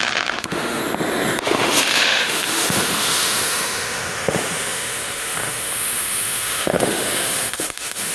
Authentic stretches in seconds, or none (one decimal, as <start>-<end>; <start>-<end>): 0.8-1.4